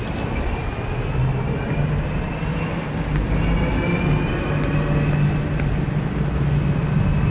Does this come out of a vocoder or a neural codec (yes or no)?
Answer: no